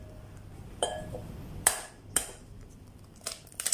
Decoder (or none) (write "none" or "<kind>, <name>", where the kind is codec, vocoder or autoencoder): vocoder, BigVGAN v2